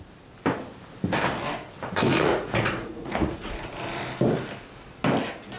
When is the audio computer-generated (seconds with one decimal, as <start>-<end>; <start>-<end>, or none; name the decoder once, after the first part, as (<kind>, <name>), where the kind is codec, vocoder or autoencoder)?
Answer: 2.1-3.7 (vocoder, Vocos)